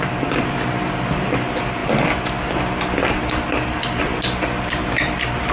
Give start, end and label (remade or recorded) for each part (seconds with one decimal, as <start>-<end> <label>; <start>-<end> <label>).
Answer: 0.0-5.5 recorded